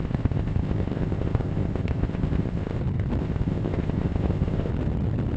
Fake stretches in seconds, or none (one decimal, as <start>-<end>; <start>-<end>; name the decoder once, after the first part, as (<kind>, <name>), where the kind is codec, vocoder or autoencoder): 0.0-2.8 (codec, ZipCodec); 3.2-4.7